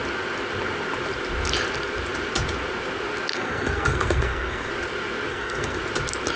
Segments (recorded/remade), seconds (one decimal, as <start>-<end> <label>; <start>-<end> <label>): 0.0-3.3 recorded; 3.3-4.7 remade; 4.7-5.3 recorded; 5.3-5.8 remade; 5.8-6.4 recorded